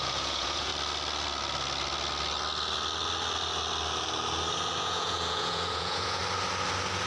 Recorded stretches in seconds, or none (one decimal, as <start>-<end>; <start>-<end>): 0.7-4.8; 6.2-7.1